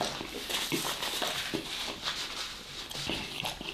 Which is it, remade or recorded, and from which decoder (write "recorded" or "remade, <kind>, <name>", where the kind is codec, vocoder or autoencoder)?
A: recorded